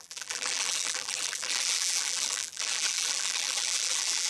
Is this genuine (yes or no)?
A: no